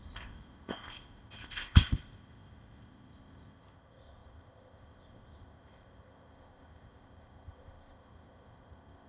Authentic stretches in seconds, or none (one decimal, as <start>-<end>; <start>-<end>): none